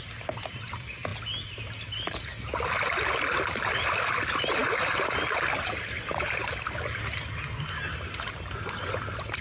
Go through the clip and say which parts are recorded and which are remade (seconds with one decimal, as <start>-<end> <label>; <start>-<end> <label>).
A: 0.0-9.4 recorded